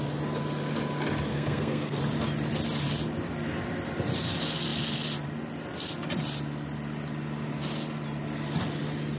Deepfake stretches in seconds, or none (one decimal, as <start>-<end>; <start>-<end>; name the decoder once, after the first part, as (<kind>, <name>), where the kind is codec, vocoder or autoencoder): 1.3-2.0 (codec, SNAC)